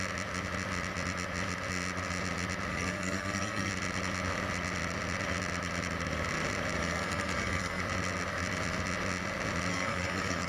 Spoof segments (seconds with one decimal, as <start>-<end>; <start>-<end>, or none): 2.7-3.7; 6.8-7.8; 9.7-10.5